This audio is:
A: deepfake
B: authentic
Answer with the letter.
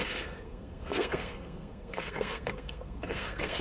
A